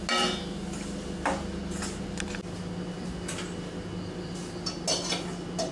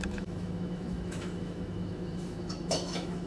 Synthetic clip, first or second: second